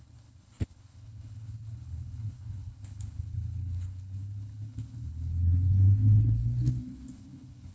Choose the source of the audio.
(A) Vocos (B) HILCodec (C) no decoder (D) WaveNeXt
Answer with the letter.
B